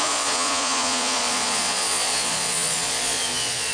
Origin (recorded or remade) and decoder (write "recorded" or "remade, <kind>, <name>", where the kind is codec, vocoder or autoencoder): remade, vocoder, Vocos